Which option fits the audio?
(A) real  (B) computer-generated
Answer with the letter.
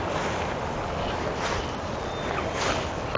A